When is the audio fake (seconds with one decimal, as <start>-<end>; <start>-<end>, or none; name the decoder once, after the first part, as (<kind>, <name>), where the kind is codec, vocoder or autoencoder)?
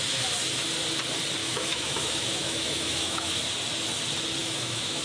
1.4-3.4 (autoencoder, DAC-VAE); 4.4-5.0